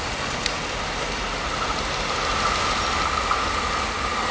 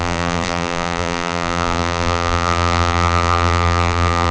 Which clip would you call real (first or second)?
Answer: first